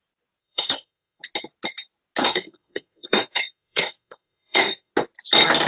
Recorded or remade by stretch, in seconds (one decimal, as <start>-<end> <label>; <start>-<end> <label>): 0.0-0.4 recorded; 0.4-1.2 remade; 1.2-2.2 recorded; 2.2-4.9 remade; 4.9-5.7 recorded

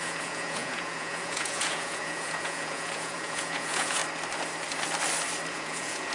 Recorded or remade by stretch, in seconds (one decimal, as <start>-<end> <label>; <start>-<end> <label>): 0.0-4.0 remade; 4.0-5.5 recorded; 5.5-6.1 remade

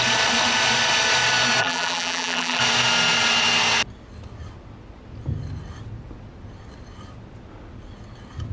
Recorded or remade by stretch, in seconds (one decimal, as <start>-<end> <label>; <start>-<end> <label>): 0.0-1.6 recorded; 1.6-2.6 remade; 2.6-8.5 recorded

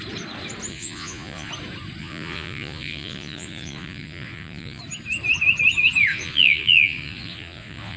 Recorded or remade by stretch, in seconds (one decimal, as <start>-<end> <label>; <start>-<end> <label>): 0.0-0.7 recorded; 0.7-1.5 remade; 1.5-2.0 recorded; 2.0-4.8 remade; 4.8-6.1 recorded; 6.1-8.0 remade

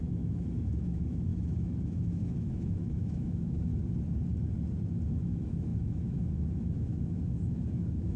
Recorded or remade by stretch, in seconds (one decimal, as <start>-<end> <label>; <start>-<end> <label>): 0.0-3.7 remade; 3.7-5.1 recorded; 5.1-8.2 remade

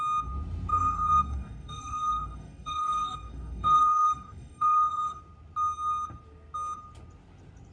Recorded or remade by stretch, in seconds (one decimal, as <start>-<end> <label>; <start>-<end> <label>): 0.0-0.7 recorded; 0.7-5.2 remade; 5.2-7.7 recorded

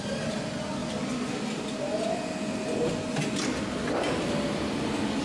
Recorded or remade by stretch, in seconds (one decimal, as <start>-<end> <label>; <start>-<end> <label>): 0.0-5.2 recorded